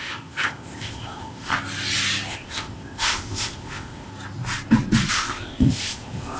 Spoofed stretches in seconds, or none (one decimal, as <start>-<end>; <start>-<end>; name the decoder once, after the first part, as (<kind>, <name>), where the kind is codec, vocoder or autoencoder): 0.0-1.5 (codec, ZipCodec); 2.3-4.1; 5.1-6.4